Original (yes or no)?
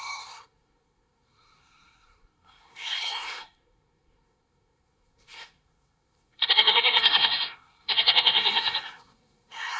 no